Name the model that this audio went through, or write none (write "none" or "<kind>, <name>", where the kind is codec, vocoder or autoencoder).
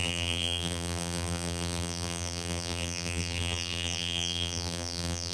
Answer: vocoder, BigVGAN v2